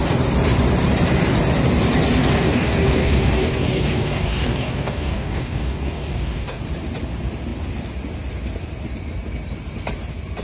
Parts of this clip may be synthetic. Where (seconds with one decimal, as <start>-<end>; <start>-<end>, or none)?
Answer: 2.2-6.6